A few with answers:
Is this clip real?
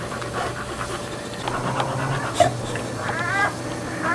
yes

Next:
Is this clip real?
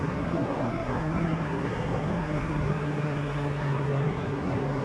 no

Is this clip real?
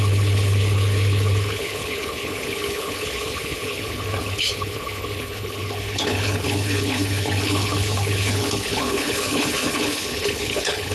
no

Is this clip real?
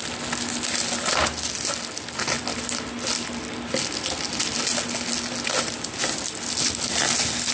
yes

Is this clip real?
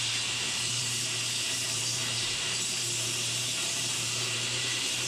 no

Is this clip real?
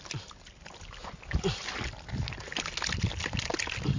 yes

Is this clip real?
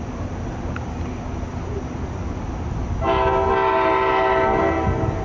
yes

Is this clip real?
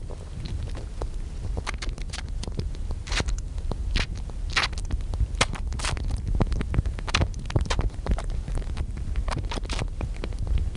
no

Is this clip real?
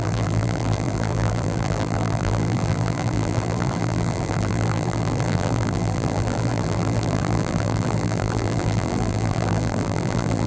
no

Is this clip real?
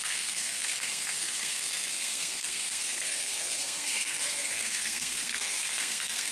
no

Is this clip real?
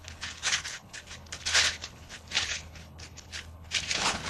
no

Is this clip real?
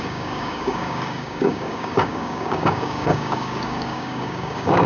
no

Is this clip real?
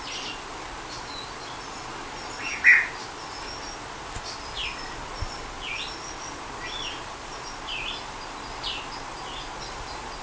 yes